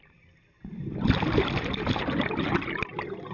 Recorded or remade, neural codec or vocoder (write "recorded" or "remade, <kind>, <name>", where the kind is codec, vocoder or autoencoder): recorded